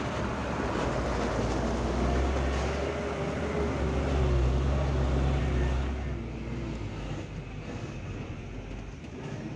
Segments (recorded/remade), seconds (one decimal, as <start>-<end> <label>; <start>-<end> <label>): 0.0-9.6 recorded